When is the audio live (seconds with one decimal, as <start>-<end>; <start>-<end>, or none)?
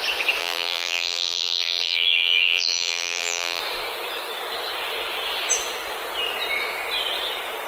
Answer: 0.0-0.4; 3.6-7.7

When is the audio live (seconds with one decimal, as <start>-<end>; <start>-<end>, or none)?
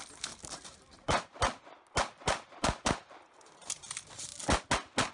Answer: 1.3-2.0; 4.3-5.1